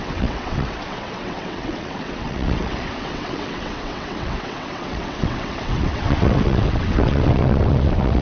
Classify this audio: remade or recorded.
remade